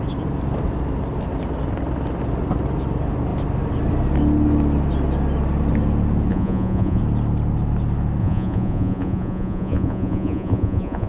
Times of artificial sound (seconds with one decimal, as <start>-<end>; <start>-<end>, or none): 6.3-7.0; 8.2-11.1